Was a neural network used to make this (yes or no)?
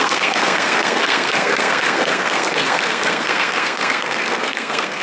yes